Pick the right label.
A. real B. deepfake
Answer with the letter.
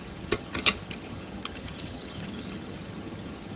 B